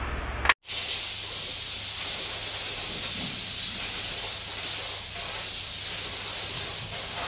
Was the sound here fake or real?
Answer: real